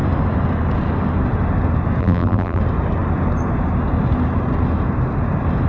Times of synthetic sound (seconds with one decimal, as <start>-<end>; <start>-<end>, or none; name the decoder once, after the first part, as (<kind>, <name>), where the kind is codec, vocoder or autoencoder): 2.0-2.6 (vocoder, BigVGAN v2)